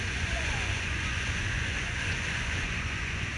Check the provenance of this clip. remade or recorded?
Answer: remade